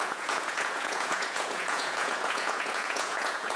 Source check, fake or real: fake